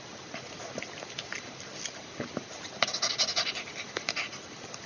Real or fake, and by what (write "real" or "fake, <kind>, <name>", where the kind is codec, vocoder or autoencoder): real